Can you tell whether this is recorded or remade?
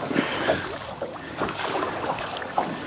remade